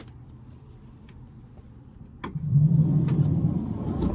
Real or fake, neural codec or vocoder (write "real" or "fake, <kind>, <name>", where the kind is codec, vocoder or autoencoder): real